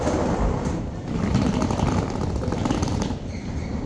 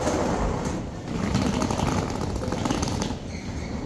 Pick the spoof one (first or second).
first